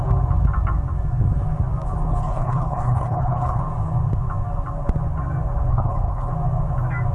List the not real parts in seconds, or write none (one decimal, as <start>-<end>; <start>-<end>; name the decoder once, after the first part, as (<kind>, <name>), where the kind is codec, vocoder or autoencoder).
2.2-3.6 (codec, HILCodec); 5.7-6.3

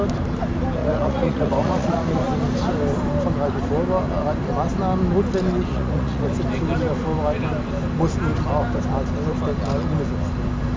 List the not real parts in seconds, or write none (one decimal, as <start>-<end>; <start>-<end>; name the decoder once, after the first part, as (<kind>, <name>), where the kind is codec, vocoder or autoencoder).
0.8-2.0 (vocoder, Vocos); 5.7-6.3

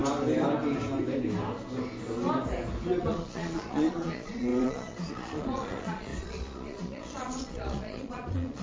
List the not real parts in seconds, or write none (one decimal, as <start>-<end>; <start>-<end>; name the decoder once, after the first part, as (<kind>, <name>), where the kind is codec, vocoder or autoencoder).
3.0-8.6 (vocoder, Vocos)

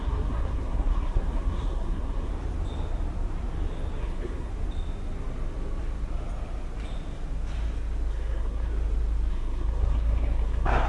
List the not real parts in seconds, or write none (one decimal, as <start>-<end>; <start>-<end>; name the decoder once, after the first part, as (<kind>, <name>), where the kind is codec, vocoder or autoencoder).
0.0-2.3 (codec, SNAC); 4.0-4.5; 8.1-8.7; 9.3-10.9